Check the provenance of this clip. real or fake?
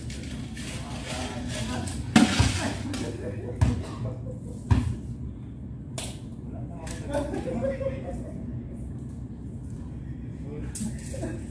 real